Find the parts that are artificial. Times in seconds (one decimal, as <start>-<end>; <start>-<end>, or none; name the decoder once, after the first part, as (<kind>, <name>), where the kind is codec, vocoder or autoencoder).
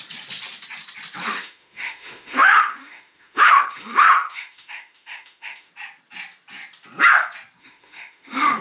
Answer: 1.2-5.7 (autoencoder, DAC-VAE); 7.6-8.6